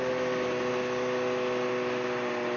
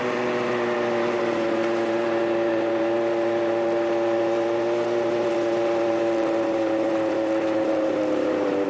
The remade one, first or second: second